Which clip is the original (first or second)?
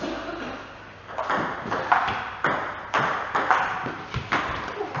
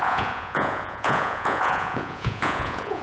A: first